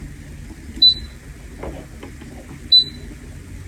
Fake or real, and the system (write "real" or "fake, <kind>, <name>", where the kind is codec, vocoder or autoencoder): real